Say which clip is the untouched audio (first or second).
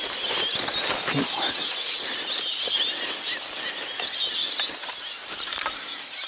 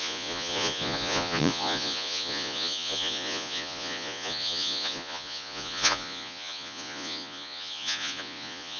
first